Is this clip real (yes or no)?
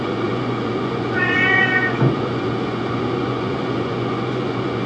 no